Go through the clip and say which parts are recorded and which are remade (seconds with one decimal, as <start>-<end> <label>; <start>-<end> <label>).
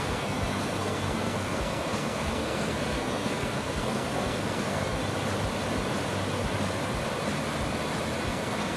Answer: 0.0-5.0 remade; 5.0-8.3 recorded; 8.3-8.8 remade